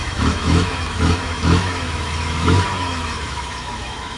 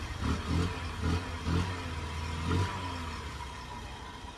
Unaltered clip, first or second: second